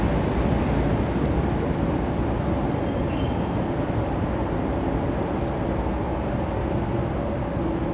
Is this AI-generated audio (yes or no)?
no